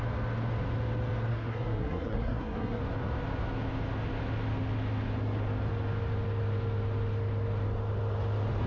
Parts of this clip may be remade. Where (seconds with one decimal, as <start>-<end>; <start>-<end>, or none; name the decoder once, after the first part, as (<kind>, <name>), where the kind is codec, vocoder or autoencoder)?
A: 1.3-2.8 (codec, SNAC)